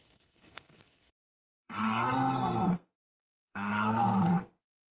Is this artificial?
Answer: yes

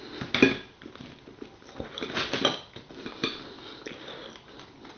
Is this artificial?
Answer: no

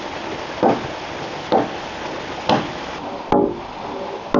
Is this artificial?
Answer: no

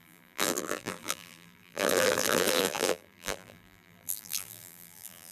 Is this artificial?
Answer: yes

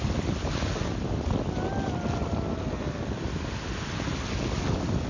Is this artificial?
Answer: no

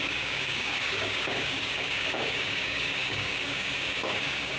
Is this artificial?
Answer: yes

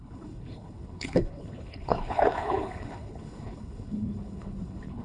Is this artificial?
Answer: yes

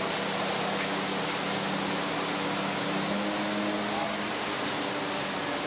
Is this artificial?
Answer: no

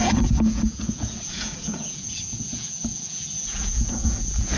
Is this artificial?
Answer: yes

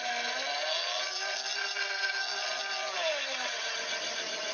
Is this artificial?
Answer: no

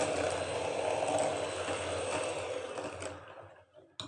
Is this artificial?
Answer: no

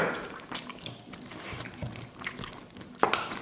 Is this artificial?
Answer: no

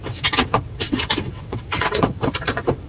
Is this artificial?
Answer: yes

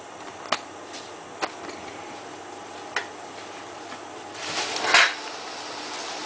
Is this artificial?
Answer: no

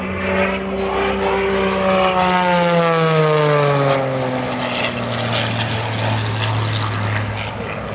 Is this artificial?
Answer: no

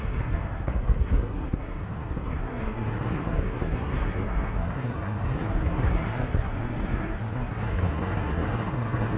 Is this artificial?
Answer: yes